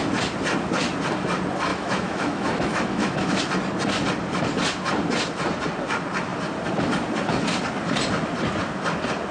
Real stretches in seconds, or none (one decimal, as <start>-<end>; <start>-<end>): 0.0-1.7; 3.4-9.3